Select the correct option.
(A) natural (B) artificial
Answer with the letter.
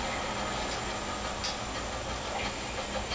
A